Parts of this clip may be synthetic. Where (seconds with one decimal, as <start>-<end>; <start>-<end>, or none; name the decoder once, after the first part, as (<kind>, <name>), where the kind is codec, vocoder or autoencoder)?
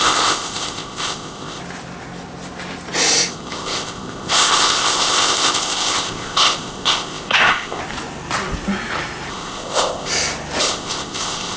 0.0-1.6 (codec, ZipCodec); 3.3-7.8; 9.3-10.1; 10.6-11.6